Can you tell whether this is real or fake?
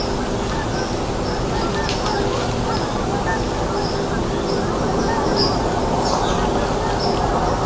real